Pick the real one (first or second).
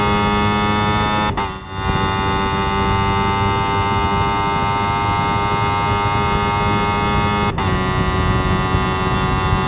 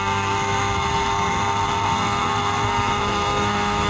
first